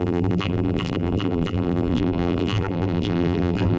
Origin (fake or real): fake